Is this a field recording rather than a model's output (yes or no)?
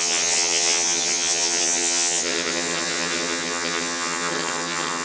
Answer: no